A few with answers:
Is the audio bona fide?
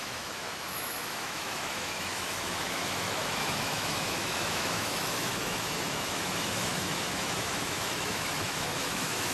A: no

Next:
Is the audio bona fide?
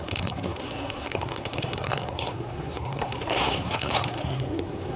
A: no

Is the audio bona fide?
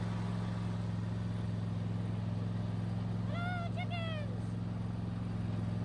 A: yes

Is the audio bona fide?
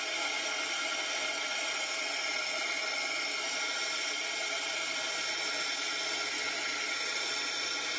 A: yes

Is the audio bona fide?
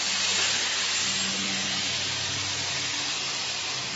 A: yes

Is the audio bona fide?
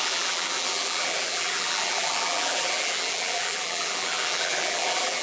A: no